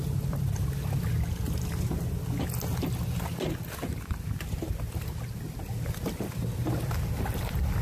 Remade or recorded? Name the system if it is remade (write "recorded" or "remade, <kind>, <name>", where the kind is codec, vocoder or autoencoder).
recorded